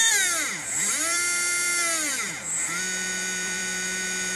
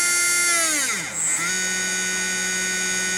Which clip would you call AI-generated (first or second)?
first